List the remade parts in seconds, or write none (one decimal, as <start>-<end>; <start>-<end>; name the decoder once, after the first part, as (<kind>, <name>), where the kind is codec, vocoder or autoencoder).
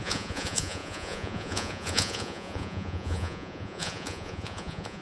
0.0-5.0 (vocoder, Vocos)